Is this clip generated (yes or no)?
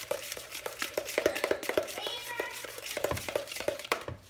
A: yes